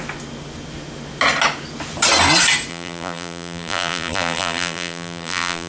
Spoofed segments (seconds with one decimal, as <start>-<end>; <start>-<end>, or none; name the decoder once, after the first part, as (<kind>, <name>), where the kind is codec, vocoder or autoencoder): 2.7-5.7 (vocoder, BigVGAN v2)